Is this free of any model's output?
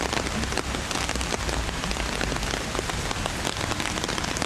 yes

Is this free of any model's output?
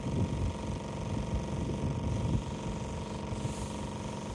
yes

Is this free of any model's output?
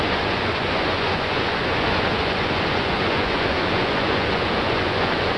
no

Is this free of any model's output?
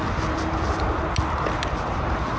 yes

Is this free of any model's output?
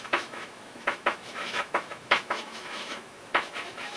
no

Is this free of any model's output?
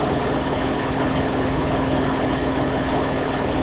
no